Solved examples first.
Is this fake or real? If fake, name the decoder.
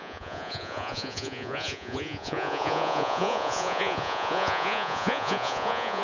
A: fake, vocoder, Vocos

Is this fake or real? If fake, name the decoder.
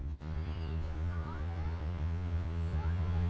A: fake, vocoder, Vocos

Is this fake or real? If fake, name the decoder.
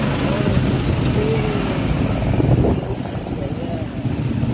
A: real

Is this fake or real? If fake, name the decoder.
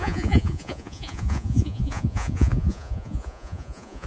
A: fake, vocoder, Vocos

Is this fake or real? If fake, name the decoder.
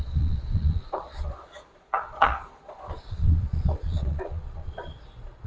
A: fake, vocoder, Vocos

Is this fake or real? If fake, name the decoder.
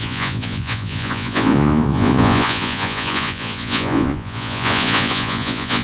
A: fake, vocoder, Vocos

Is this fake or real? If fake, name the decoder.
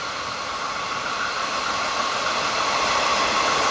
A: real